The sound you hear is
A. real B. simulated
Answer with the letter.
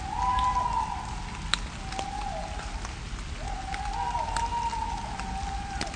A